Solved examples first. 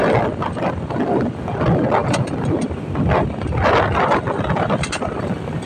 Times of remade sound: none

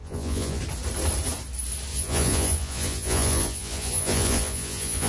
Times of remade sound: 0.0-0.6 (vocoder, Vocos); 1.9-5.1

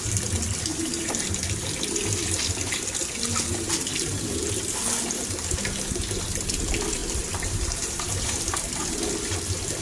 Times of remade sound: 0.7-1.3 (vocoder, BigVGAN v2); 3.9-4.7; 7.0-8.4

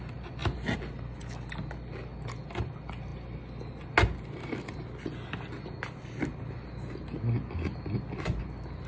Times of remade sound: none

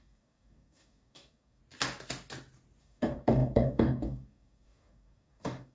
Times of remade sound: 0.0-1.6 (codec, DAC); 2.8-5.7

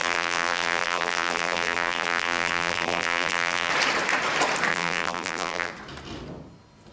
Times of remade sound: 0.0-3.7 (vocoder, BigVGAN v2); 4.7-5.7